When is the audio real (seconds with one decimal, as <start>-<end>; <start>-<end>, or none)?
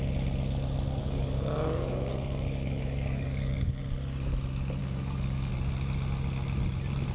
0.0-1.0; 3.8-4.8; 5.5-7.1